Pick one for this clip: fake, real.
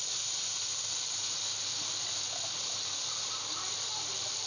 real